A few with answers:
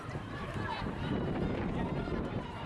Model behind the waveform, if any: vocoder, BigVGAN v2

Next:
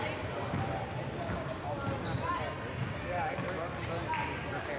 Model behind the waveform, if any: none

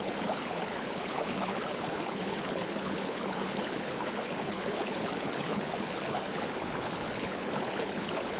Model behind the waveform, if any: codec, HILCodec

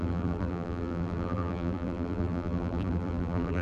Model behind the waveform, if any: vocoder, BigVGAN v2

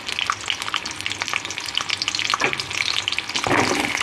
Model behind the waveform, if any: none